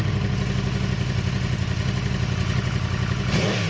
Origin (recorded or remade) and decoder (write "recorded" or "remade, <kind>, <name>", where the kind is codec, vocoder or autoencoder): recorded